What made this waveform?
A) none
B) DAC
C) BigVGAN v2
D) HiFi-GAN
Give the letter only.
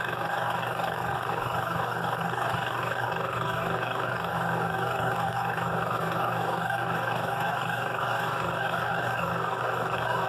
B